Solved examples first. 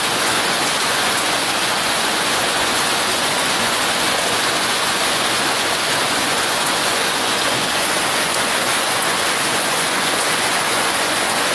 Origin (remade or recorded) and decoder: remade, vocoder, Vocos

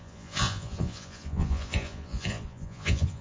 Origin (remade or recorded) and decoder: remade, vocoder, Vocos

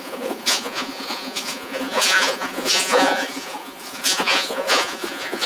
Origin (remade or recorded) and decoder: remade, vocoder, Vocos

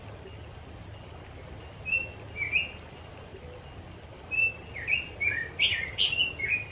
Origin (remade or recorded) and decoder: recorded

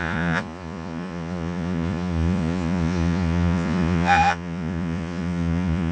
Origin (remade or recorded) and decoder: remade, vocoder, Vocos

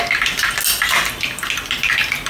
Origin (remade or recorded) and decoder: recorded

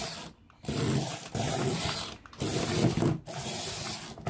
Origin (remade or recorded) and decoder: recorded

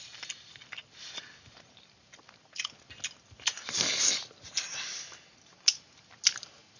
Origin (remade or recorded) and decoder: recorded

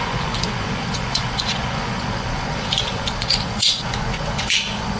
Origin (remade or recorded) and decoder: remade, vocoder, Vocos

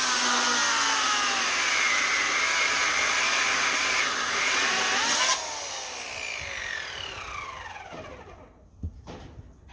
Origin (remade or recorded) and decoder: recorded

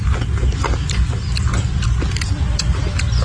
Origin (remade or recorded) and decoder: recorded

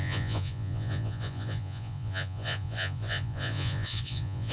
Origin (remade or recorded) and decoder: remade, vocoder, Vocos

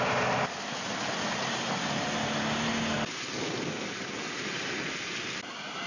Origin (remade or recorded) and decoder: recorded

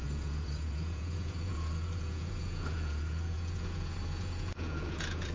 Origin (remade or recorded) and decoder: remade, vocoder, Vocos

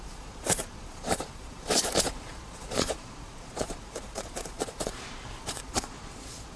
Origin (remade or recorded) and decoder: remade, vocoder, Vocos